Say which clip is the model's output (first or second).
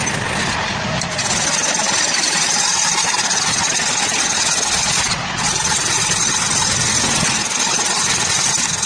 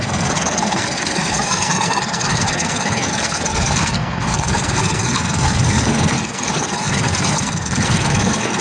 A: second